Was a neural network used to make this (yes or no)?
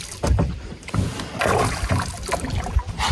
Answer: no